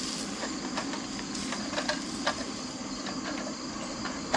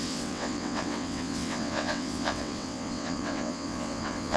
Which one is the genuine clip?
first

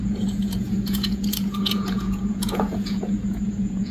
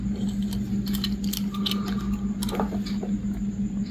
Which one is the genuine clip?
second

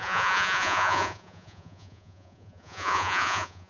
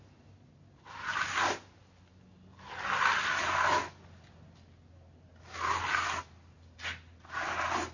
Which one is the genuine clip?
second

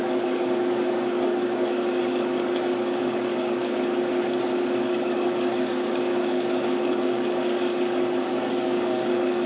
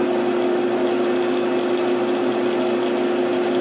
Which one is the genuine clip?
second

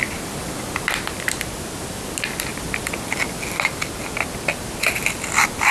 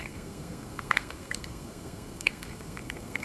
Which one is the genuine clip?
first